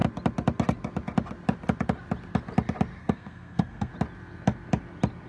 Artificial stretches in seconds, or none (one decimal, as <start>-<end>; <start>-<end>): 3.0-3.9